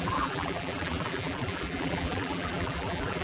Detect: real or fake fake